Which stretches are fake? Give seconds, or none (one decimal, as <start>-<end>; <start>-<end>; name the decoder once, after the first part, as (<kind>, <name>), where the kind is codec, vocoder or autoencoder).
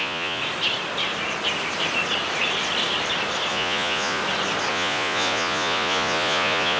0.0-0.4 (vocoder, Vocos); 3.5-4.2; 4.7-6.8